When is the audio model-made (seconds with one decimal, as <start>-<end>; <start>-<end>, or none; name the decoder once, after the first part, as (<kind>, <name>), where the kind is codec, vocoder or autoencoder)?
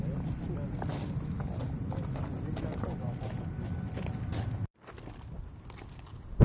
none